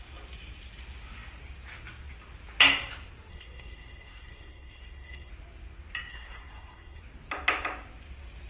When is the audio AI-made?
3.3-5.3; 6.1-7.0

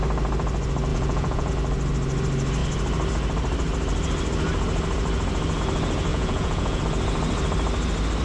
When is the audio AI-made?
0.9-1.5; 6.1-6.8